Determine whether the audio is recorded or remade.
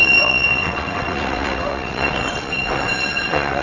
remade